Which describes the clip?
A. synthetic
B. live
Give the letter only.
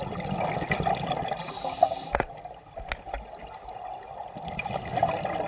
B